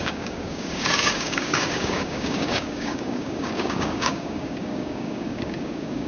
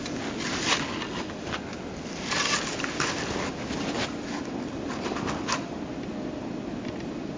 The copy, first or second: first